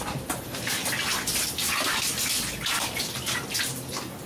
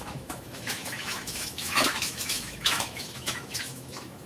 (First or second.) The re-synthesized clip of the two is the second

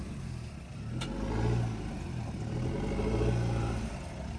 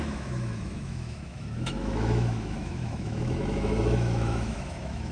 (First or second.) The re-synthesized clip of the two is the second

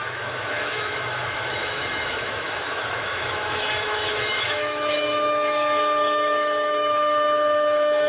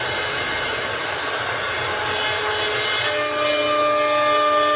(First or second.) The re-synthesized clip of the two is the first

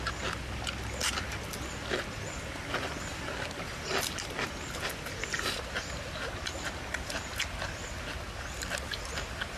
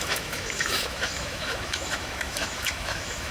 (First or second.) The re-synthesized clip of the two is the second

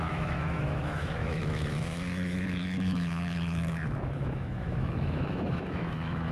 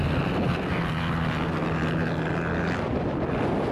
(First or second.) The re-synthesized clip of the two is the first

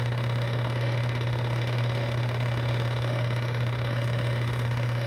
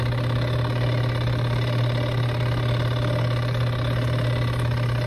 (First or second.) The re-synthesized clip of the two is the first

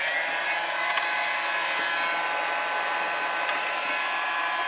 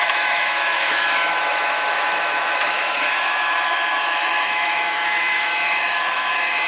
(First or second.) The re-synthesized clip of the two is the second